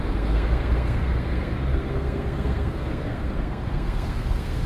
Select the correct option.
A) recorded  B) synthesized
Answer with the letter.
B